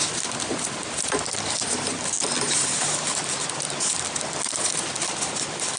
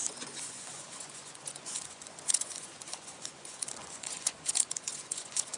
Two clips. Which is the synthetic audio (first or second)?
second